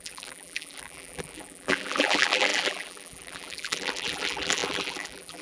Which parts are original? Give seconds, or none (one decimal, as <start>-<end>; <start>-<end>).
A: none